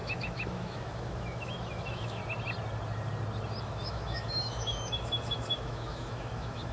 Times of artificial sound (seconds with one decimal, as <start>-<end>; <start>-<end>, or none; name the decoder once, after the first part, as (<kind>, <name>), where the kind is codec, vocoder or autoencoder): 0.0-2.2 (autoencoder, DAC-VAE); 3.6-6.7